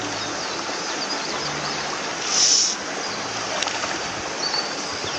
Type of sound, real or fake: real